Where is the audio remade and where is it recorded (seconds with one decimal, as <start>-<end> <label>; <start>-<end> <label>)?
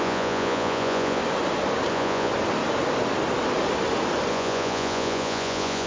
0.0-1.2 remade; 1.2-1.9 recorded; 1.9-2.3 remade; 2.3-4.3 recorded; 4.3-5.9 remade